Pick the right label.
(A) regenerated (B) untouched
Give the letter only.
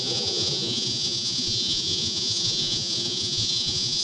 A